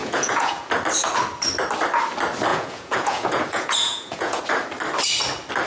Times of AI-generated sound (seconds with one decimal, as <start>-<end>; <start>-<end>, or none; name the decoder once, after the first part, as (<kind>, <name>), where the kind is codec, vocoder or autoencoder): 0.0-0.7 (vocoder, Vocos); 2.5-4.4